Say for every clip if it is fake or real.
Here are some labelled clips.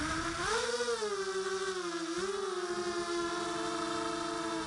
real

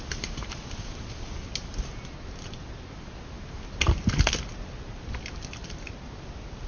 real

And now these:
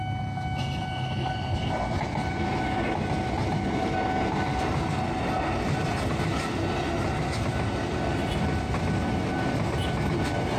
real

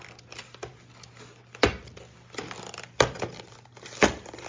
real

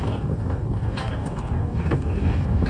fake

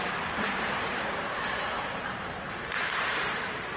fake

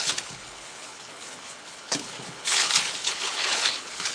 fake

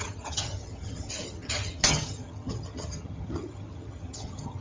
fake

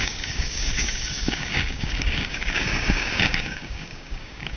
fake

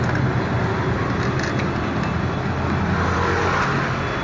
real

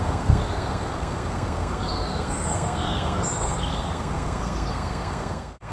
fake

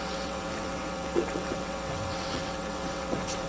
fake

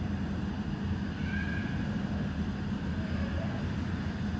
real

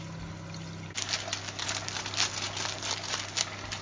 real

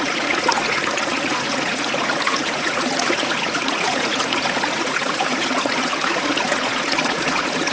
fake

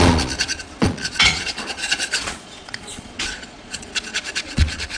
fake